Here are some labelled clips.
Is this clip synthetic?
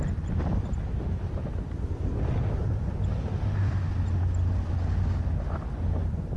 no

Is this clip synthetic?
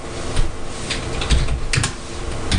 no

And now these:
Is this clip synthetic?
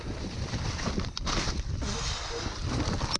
no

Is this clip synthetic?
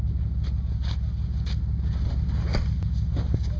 no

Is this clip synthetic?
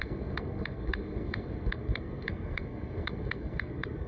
yes